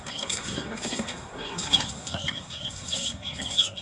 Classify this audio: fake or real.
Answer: fake